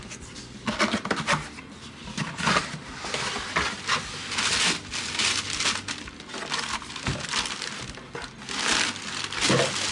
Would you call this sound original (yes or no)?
yes